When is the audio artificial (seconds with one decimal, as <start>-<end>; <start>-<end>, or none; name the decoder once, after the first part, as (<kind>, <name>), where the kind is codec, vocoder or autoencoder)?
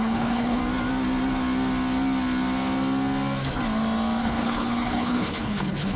0.0-0.6 (codec, HILCodec); 4.2-6.0